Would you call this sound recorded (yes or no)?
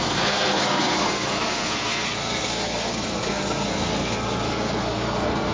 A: no